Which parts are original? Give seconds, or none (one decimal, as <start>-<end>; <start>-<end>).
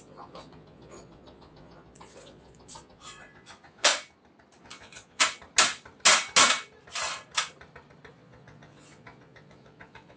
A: 3.9-4.6; 5.2-8.1